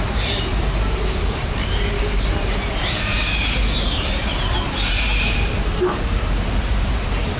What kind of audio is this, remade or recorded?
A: remade